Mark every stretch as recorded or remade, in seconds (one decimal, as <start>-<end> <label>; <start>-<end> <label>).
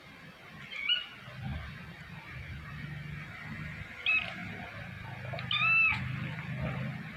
0.0-7.2 recorded